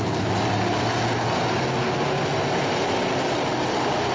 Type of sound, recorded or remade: recorded